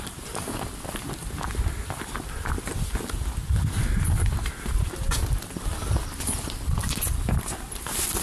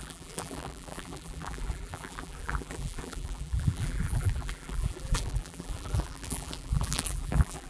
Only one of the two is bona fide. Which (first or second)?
first